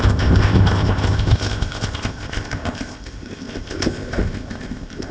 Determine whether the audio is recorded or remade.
remade